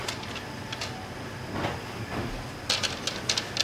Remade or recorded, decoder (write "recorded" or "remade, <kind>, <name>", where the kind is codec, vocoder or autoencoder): recorded